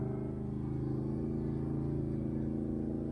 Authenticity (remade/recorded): recorded